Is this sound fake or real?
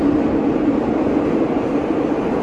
real